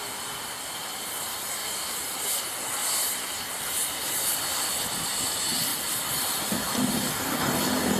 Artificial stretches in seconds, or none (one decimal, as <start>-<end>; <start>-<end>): 1.6-2.4